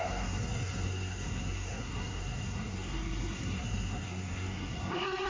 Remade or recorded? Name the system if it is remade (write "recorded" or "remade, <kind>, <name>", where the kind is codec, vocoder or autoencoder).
remade, codec, SNAC